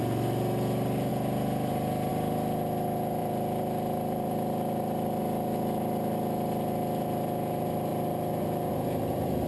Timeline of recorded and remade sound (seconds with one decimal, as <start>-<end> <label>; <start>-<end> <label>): 0.0-3.2 recorded; 3.2-5.2 remade; 5.2-9.5 recorded